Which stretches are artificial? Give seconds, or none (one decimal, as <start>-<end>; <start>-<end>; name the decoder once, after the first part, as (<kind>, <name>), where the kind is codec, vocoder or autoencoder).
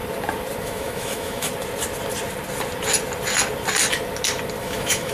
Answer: 0.6-1.5 (autoencoder, DAC-VAE); 4.6-5.1